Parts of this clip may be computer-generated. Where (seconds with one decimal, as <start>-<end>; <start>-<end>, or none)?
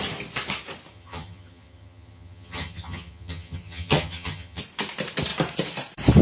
0.9-4.6